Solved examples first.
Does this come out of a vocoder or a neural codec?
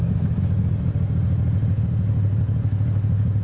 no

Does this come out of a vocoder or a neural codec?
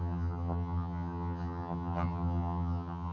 yes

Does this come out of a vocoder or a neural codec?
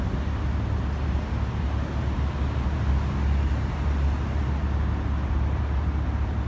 no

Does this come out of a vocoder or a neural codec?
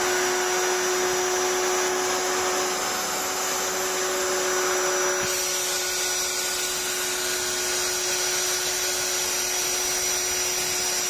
no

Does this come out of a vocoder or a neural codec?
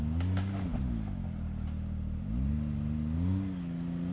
no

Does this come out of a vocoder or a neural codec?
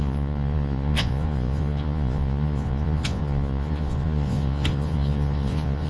yes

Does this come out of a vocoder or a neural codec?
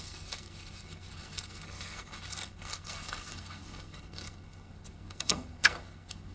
yes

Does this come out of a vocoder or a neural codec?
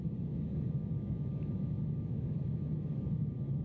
yes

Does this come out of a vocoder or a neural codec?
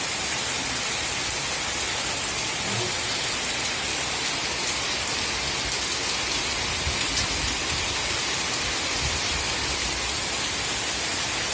no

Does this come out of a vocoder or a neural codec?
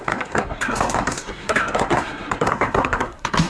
yes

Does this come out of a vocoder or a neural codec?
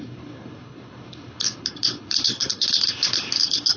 yes